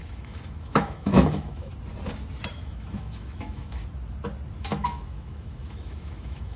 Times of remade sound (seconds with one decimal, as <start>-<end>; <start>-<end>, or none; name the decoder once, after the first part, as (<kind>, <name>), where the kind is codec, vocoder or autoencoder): 0.0-1.7 (autoencoder, DAC-VAE); 2.5-3.8; 4.6-6.6